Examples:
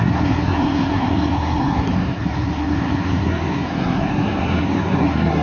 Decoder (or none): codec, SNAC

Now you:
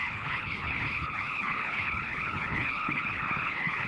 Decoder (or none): codec, HILCodec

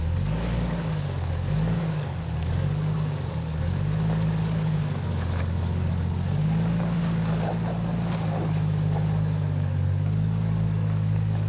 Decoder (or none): codec, DAC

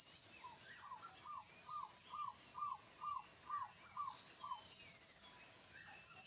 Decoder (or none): none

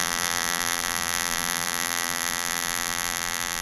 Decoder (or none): vocoder, BigVGAN v2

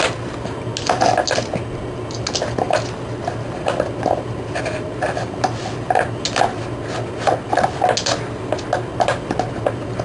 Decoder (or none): none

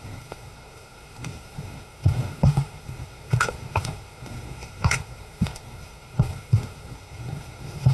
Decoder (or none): codec, SNAC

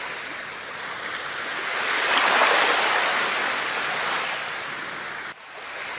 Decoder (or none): none